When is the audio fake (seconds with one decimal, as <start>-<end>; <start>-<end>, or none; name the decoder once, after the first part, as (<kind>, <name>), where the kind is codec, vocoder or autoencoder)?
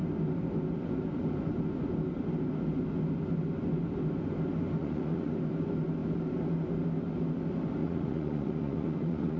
4.8-5.3 (vocoder, Vocos); 7.8-9.4